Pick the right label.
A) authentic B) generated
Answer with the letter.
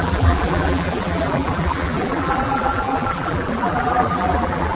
B